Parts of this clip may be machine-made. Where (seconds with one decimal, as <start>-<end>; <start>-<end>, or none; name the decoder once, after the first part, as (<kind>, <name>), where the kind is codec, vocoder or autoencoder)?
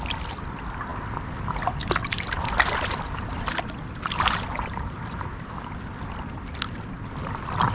none